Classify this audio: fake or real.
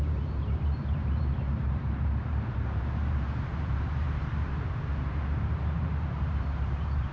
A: fake